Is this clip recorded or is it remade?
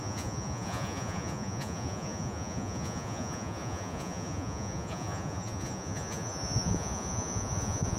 remade